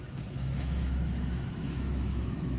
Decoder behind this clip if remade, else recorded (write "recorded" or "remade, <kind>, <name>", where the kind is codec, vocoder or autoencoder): remade, autoencoder, DAC-VAE